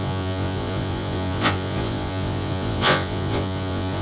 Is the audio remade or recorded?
remade